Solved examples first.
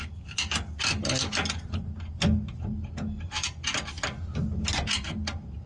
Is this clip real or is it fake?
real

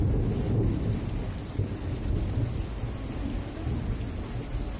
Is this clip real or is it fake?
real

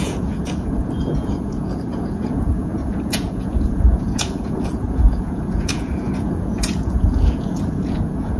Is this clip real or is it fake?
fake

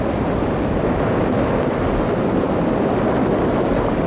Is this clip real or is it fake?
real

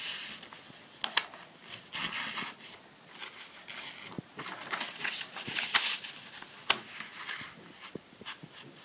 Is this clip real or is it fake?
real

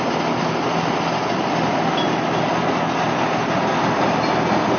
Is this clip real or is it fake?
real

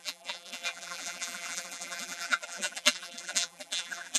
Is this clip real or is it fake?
fake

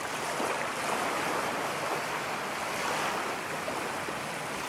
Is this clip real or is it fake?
real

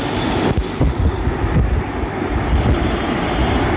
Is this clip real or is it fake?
real